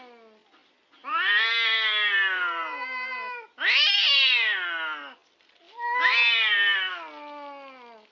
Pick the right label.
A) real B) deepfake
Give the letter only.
A